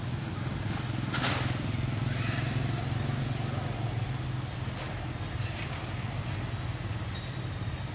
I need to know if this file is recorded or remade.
recorded